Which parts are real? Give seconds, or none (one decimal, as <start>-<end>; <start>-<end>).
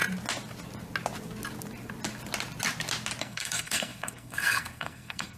0.0-3.2